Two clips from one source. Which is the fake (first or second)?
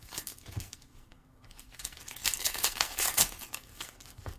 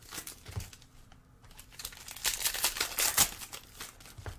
first